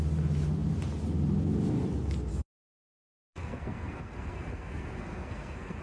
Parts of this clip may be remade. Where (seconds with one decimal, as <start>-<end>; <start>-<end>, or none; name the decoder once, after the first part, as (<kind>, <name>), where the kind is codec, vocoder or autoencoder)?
2.3-5.8 (codec, SNAC)